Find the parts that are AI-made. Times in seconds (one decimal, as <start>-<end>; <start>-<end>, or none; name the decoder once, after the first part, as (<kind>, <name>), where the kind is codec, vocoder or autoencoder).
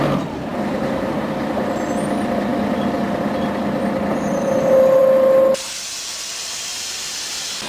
none